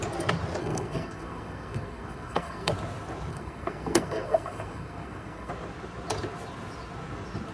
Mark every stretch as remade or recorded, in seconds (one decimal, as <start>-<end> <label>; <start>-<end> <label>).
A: 0.0-0.6 recorded; 0.6-2.7 remade; 2.7-3.3 recorded; 3.3-5.5 remade; 5.5-7.5 recorded